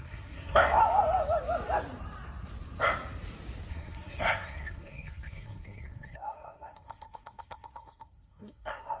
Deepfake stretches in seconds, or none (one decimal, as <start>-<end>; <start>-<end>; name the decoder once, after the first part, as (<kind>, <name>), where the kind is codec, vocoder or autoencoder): 0.0-0.8 (codec, SNAC); 3.7-9.0